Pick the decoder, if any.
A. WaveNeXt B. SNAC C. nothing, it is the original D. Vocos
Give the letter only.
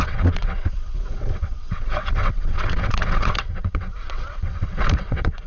A